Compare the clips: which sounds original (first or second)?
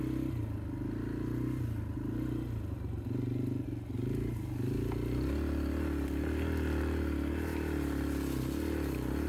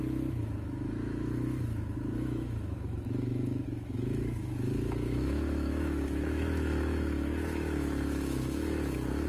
first